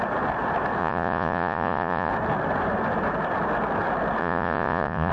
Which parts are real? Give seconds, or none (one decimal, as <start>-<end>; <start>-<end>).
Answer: 0.0-0.8; 2.1-4.2